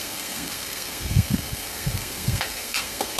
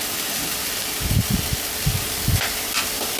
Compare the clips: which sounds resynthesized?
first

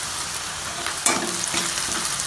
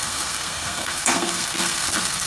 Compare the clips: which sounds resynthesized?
second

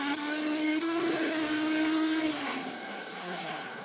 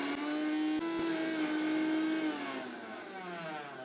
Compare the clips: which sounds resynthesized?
first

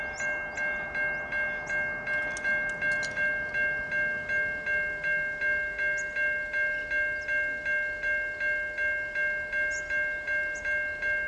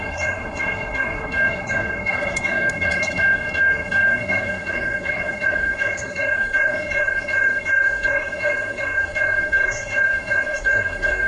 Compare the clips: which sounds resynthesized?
second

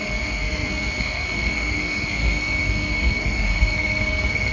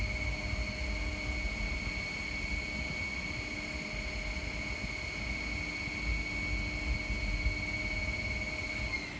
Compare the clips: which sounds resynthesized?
first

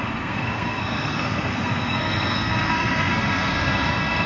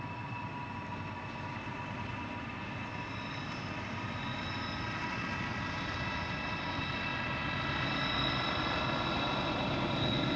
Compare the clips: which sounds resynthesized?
first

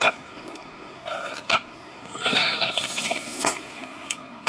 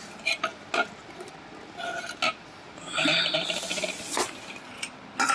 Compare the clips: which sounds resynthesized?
first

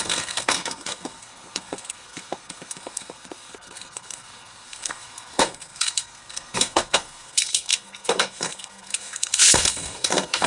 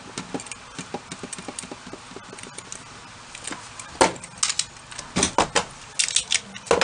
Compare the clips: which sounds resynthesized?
first